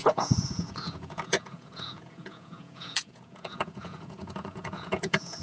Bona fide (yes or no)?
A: no